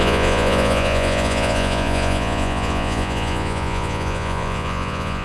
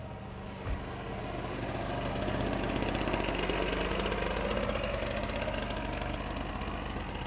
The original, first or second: second